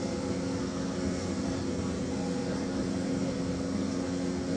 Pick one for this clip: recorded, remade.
remade